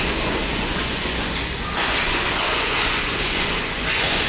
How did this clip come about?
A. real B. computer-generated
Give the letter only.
B